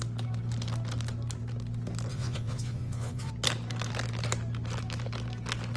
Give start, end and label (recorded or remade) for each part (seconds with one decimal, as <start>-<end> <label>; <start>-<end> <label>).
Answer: 0.0-2.1 recorded; 2.1-3.3 remade; 3.3-5.8 recorded